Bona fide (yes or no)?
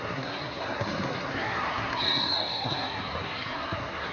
no